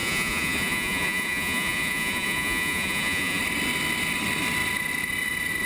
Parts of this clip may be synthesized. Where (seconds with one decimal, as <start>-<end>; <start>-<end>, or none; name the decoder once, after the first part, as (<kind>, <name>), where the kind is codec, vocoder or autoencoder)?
0.0-3.4 (vocoder, Vocos)